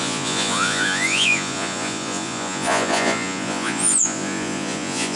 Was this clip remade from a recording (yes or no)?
yes